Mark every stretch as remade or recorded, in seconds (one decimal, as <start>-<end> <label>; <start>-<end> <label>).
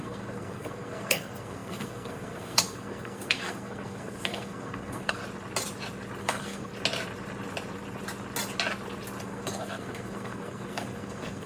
0.0-5.2 remade; 5.2-6.2 recorded; 6.2-6.7 remade; 6.7-9.2 recorded; 9.2-11.5 remade